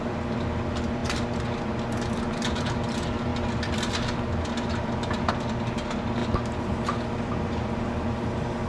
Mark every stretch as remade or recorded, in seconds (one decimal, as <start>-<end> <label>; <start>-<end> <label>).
0.0-6.2 recorded; 6.2-7.8 remade; 7.8-8.7 recorded